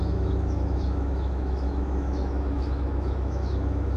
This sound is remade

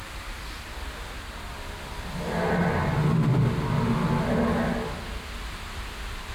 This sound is recorded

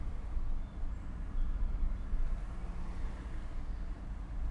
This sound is recorded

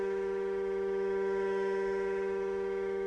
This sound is remade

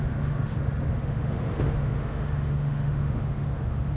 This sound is remade